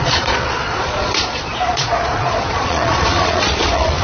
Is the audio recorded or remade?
remade